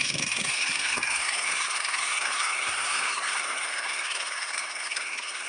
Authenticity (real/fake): fake